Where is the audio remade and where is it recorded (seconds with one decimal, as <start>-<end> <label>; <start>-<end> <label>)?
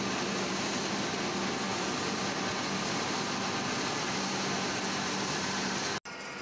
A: 0.0-6.4 recorded